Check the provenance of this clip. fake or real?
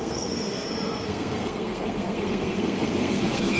fake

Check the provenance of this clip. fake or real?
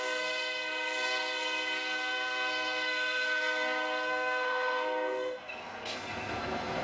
fake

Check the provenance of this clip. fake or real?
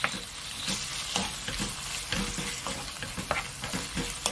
real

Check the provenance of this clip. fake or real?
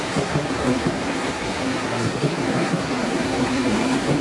fake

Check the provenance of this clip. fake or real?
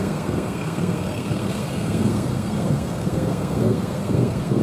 fake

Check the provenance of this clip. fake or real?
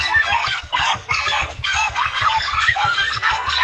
fake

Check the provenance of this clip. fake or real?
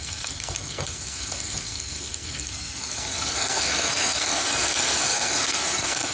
fake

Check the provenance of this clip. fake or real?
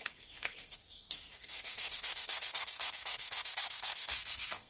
fake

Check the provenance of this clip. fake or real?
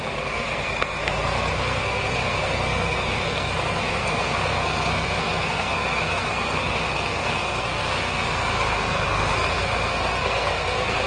fake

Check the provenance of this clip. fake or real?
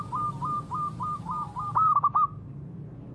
real